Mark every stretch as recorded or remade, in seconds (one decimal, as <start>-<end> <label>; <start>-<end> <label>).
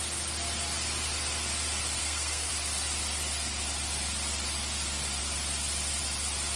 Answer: 0.0-2.0 recorded; 2.0-2.5 remade; 2.5-6.6 recorded